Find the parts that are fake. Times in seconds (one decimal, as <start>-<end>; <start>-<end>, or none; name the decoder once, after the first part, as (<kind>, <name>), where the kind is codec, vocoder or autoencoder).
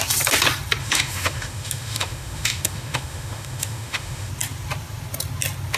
0.8-4.3 (autoencoder, DAC-VAE)